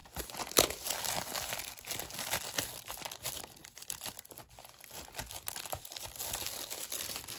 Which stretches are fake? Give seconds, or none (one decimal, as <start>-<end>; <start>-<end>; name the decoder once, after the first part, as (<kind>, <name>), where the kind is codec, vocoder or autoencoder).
none